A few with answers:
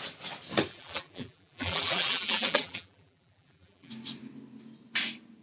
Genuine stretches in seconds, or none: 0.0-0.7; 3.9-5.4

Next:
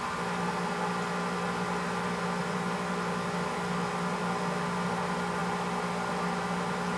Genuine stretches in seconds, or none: 0.0-7.0

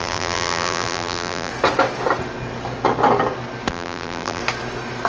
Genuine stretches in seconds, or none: 1.5-3.7; 4.4-5.1

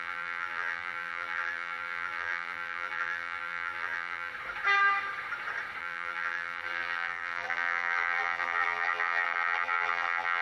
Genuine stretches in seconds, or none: 4.3-5.8

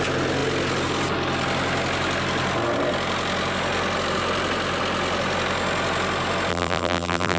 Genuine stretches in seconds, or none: 0.0-6.5

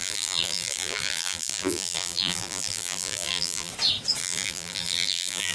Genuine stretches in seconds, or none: 3.7-4.2